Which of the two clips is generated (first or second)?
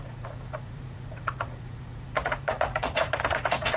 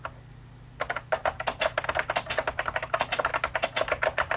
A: first